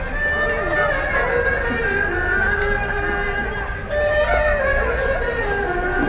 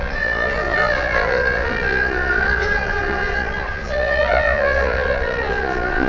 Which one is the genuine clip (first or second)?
first